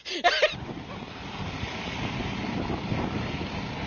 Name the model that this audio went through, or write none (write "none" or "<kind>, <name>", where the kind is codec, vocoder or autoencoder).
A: none